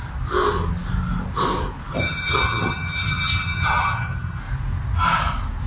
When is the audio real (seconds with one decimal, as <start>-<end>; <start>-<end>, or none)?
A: 0.0-1.9; 4.4-5.7